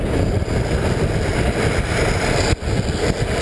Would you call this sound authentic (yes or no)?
yes